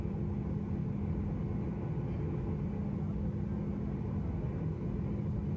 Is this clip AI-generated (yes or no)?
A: no